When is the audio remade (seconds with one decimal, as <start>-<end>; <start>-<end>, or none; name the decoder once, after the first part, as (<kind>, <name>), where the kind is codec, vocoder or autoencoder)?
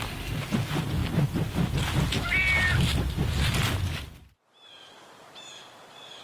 none